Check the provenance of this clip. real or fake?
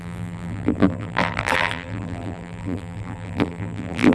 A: fake